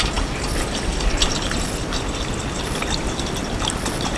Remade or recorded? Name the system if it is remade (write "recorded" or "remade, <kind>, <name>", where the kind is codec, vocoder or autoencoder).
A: recorded